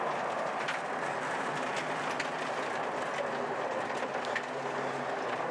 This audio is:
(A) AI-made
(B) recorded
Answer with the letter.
B